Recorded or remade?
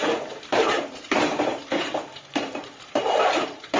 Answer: remade